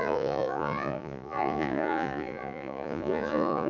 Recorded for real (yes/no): no